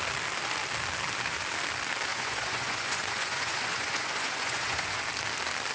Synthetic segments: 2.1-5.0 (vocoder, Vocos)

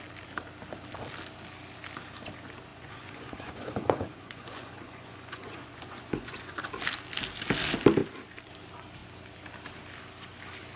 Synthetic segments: 2.7-6.6 (vocoder, Vocos)